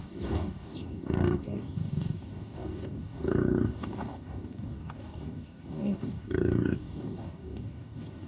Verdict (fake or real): fake